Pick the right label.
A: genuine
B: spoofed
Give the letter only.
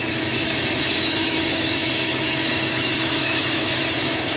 B